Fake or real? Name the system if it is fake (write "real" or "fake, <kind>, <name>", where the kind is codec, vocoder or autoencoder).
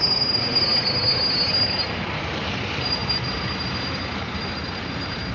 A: fake, vocoder, BigVGAN v2